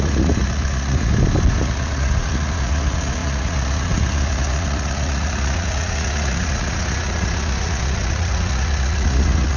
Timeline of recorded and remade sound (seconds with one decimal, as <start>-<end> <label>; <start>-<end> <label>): 0.0-1.1 remade; 1.1-1.6 recorded; 1.6-9.6 remade